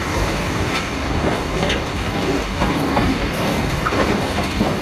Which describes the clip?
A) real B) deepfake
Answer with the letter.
B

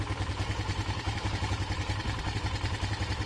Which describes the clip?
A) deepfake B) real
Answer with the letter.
A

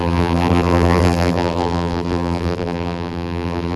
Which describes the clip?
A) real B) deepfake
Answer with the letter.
B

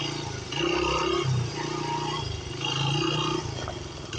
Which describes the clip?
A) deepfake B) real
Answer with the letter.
B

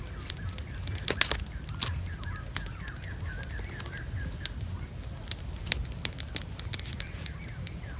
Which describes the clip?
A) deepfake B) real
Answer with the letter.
B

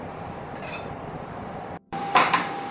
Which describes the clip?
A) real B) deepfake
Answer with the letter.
B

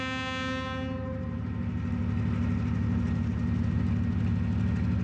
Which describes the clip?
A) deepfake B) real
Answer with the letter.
B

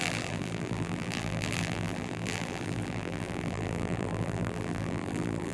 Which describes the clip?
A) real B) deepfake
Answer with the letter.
B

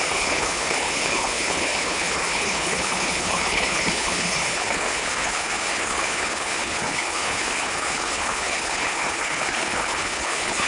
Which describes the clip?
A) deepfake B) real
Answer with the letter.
A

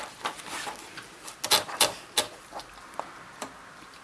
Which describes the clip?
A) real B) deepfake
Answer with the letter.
A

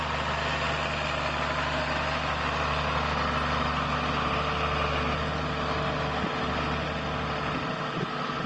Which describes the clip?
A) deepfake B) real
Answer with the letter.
B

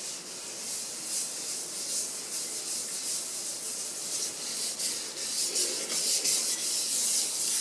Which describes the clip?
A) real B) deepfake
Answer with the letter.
A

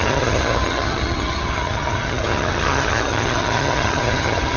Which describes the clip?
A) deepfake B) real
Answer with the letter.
A